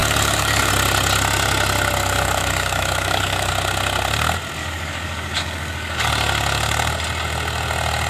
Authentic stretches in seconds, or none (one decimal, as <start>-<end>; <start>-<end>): 0.7-2.0; 3.5-4.6; 6.1-8.1

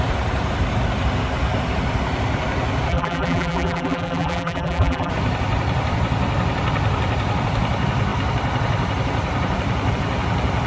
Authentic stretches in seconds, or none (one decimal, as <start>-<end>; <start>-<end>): 0.0-2.9; 5.1-10.7

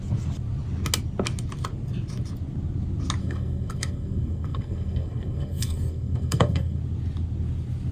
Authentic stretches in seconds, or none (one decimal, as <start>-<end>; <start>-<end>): 0.0-3.2; 6.8-7.9

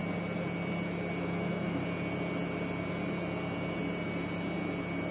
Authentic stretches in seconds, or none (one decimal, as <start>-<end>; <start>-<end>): 0.0-1.2; 1.8-5.1

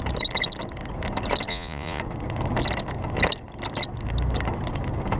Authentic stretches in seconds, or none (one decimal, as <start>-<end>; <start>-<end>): 0.0-1.5; 2.0-5.2

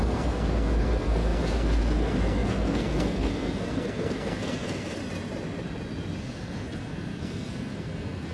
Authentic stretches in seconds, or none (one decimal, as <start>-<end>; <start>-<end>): 5.0-6.2

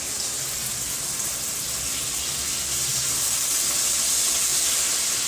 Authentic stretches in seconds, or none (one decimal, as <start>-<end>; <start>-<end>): 0.0-5.3